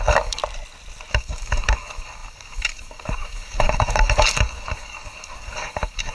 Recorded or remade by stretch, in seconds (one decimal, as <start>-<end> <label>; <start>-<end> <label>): 0.0-0.4 remade; 0.4-1.1 recorded; 1.1-6.1 remade